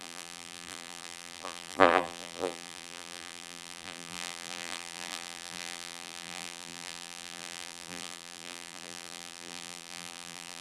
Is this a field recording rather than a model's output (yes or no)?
no